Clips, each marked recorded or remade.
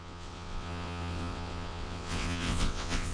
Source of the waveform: remade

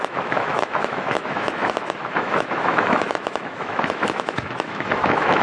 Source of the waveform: remade